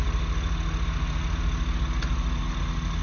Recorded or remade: recorded